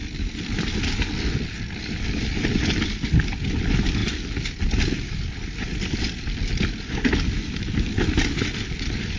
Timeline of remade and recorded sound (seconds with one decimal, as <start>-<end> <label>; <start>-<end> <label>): 0.0-9.2 recorded